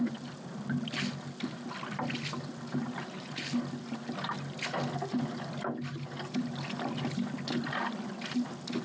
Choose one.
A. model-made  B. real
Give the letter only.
B